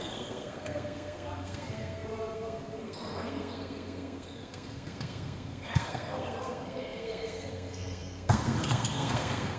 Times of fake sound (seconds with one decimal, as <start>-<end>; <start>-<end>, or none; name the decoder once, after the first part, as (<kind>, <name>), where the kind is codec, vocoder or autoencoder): 0.0-9.6 (codec, SNAC)